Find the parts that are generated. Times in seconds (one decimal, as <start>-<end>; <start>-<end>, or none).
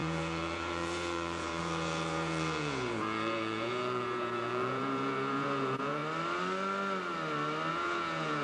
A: 0.0-6.0; 7.7-8.4